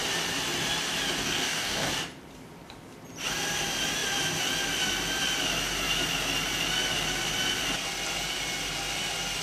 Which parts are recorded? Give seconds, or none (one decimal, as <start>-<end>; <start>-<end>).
0.0-1.2; 1.9-9.4